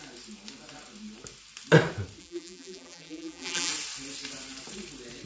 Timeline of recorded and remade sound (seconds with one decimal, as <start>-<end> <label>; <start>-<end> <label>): 0.0-2.2 recorded; 2.2-3.7 remade; 3.7-5.3 recorded